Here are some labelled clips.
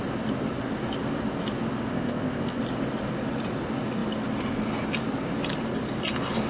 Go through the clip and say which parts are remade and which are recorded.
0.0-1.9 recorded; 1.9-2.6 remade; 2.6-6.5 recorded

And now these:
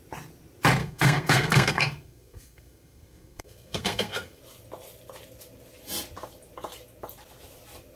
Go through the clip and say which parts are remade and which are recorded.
0.0-0.8 recorded; 0.8-4.4 remade; 4.4-8.0 recorded